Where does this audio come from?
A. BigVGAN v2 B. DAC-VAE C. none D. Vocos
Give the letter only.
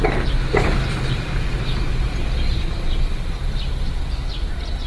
C